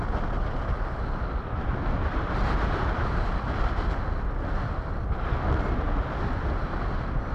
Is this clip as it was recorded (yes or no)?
yes